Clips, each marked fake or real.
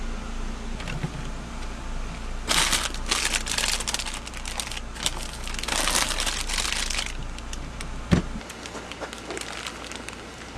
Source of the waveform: real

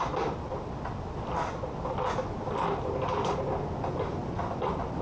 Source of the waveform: real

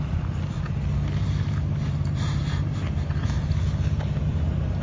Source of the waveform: real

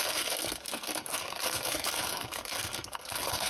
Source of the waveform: fake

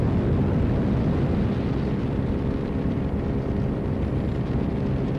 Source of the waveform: real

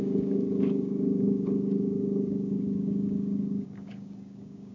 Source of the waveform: fake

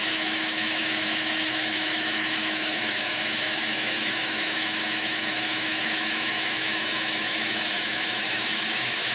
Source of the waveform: fake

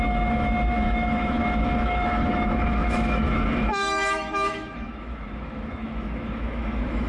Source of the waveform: fake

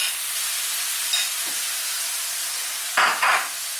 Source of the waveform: real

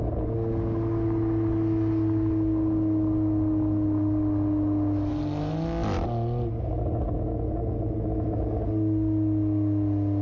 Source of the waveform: real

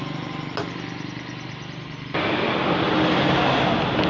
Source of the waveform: real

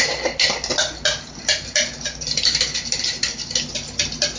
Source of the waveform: real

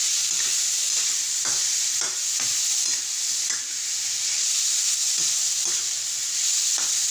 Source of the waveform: real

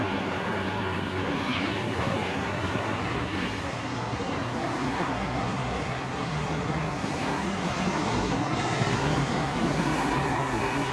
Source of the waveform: fake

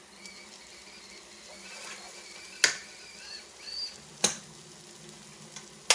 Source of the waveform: real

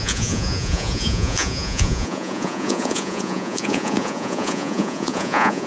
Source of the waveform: fake